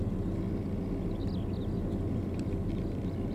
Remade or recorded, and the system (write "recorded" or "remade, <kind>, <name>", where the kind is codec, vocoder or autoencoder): recorded